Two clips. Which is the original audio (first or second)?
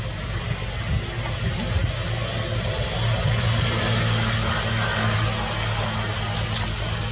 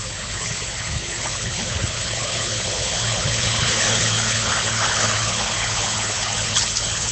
first